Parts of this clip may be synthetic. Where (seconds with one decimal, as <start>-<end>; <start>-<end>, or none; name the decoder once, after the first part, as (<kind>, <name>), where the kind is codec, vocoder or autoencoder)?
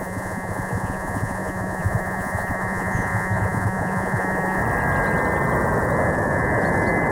0.0-4.6 (vocoder, Vocos)